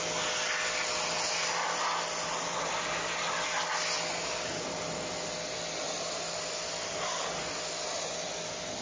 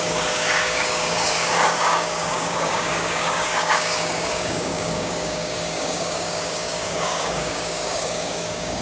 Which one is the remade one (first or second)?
second